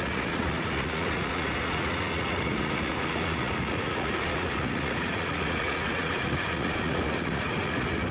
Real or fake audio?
fake